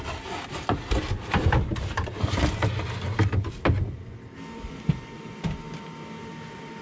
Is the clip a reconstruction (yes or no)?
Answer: no